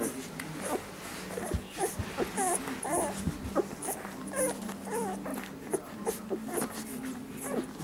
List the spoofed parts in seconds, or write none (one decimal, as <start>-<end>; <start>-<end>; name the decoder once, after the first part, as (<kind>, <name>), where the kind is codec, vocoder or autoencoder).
none